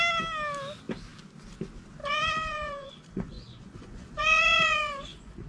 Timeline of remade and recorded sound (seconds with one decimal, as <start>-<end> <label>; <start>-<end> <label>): 0.0-2.0 recorded; 2.0-5.5 remade